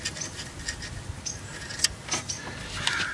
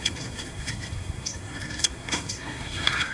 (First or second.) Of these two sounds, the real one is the first